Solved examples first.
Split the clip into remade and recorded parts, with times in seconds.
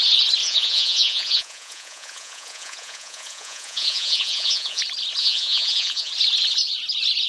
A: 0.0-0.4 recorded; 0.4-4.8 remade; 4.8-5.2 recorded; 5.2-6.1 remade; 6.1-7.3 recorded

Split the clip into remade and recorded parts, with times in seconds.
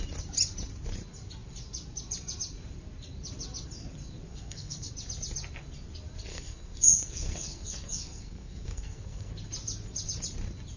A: 0.0-4.3 recorded; 4.3-4.9 remade; 4.9-6.3 recorded; 6.3-9.3 remade; 9.3-10.8 recorded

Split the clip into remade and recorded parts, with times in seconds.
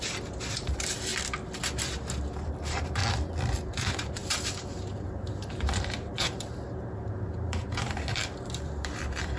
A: 0.0-1.1 remade; 1.1-2.5 recorded; 2.5-3.0 remade; 3.0-3.7 recorded; 3.7-9.4 remade